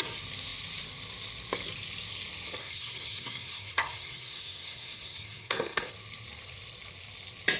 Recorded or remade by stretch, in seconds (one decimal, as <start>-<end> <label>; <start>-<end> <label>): 0.0-2.6 recorded; 2.6-5.9 remade; 5.9-7.6 recorded